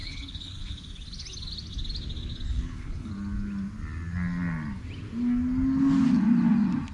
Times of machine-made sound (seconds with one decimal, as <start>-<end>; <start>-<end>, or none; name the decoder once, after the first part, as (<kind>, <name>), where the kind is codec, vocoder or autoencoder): 0.0-0.7 (codec, HILCodec); 2.5-3.1